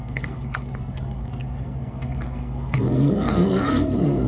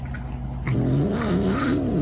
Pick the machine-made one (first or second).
first